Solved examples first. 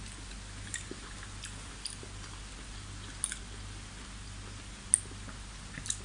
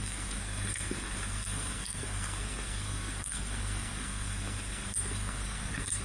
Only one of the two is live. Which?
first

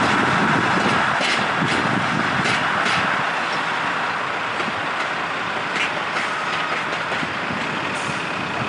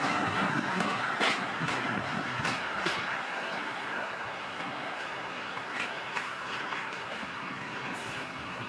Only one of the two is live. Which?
first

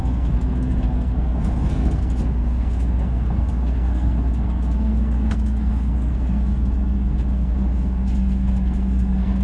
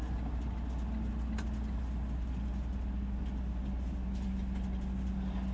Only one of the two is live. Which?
second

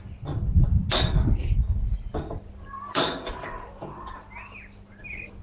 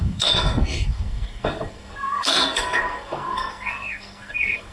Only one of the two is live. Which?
first